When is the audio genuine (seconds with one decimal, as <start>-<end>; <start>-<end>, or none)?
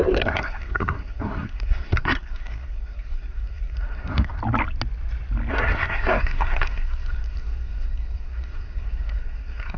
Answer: 4.4-5.5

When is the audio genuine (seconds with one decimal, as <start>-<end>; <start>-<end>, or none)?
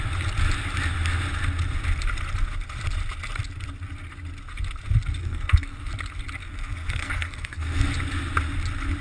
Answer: 0.0-5.2; 5.9-6.4; 7.9-9.0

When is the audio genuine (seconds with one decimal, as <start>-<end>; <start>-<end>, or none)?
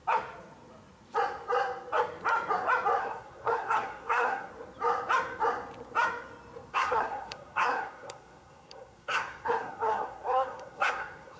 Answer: 0.0-3.0; 4.5-6.7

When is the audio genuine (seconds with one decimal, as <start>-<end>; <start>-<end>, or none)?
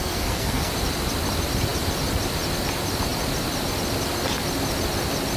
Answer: 0.7-5.4